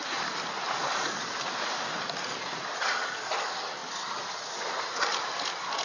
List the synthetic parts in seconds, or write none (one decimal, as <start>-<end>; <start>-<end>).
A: none